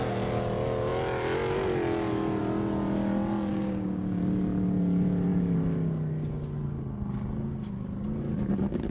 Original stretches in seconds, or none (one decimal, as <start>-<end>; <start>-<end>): 0.0-3.5; 4.2-8.9